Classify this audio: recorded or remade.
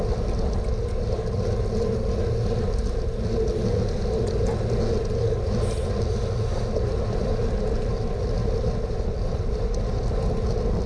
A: recorded